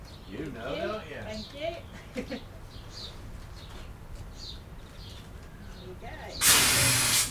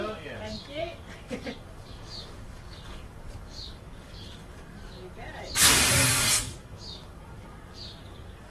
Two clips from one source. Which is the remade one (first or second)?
second